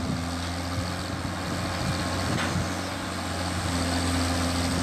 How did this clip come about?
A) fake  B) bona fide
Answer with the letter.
B